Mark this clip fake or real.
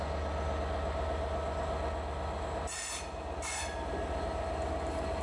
real